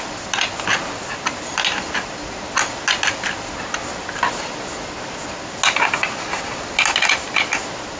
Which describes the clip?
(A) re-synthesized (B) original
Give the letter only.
B